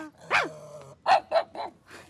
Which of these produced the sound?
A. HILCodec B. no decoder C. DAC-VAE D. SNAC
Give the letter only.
B